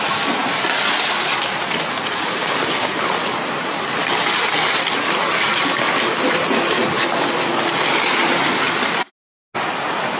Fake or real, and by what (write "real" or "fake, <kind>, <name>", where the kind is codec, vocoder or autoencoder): real